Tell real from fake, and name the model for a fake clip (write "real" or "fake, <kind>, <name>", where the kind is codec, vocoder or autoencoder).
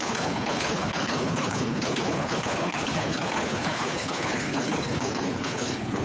fake, codec, HILCodec